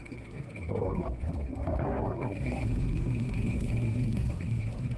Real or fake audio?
fake